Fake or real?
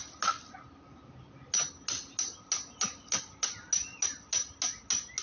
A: real